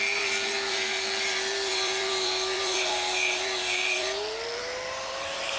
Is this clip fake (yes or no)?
yes